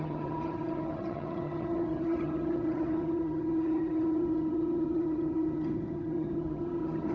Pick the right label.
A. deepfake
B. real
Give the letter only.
A